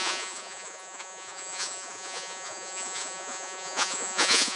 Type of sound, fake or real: fake